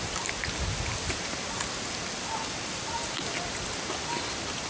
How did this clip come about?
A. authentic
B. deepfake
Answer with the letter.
A